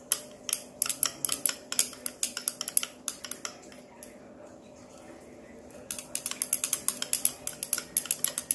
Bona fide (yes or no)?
yes